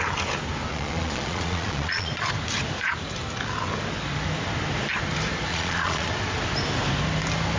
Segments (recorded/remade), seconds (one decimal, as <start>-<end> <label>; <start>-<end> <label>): 0.0-0.7 recorded; 0.7-2.1 remade; 2.1-5.5 recorded; 5.5-6.1 remade; 6.1-7.6 recorded